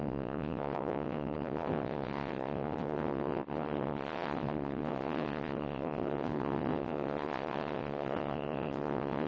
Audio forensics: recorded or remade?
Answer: remade